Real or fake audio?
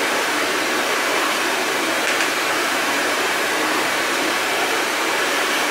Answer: fake